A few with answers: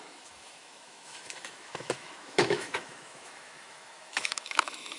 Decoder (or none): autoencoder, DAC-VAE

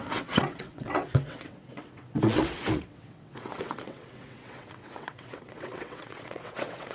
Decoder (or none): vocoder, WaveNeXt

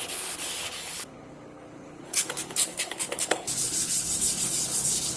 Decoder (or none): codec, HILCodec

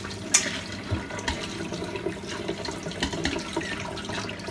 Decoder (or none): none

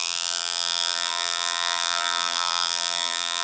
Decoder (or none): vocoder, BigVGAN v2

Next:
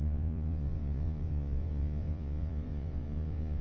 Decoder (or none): vocoder, Vocos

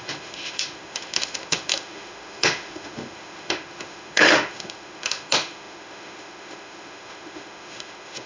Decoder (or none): autoencoder, DAC-VAE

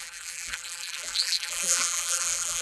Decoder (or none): vocoder, BigVGAN v2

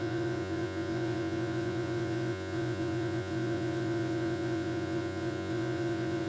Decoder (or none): vocoder, Vocos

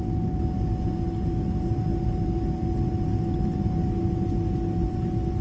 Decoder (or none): none